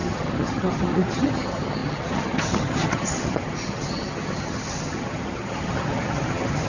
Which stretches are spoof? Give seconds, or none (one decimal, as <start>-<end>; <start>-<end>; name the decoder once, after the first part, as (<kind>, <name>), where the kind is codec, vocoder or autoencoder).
0.0-6.7 (vocoder, HiFi-GAN)